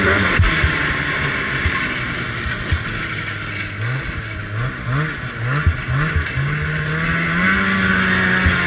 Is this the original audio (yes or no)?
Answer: yes